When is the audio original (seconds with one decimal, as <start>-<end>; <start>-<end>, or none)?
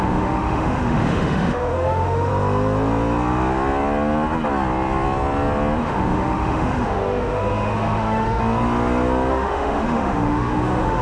2.3-5.8; 8.4-9.3